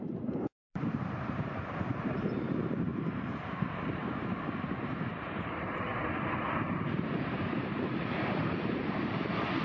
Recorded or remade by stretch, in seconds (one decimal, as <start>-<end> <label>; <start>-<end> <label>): 0.0-5.9 remade; 5.9-6.7 recorded; 6.7-9.6 remade